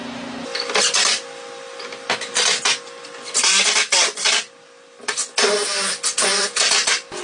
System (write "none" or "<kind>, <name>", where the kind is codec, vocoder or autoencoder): none